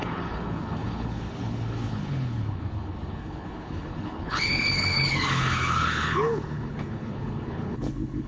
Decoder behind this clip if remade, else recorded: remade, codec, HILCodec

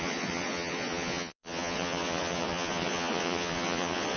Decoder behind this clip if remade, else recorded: remade, vocoder, Vocos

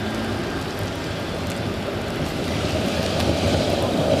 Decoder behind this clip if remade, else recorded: recorded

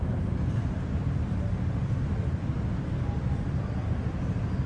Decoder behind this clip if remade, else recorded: recorded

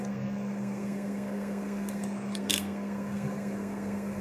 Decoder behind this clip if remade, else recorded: remade, codec, SNAC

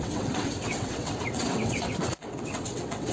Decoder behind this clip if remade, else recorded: remade, vocoder, WaveNeXt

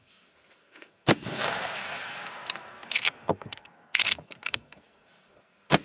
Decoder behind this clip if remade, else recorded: remade, codec, SNAC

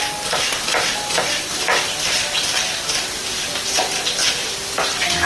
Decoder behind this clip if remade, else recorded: recorded